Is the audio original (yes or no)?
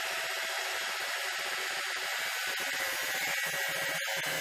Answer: yes